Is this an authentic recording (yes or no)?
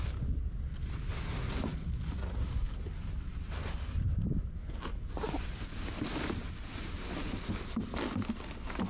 yes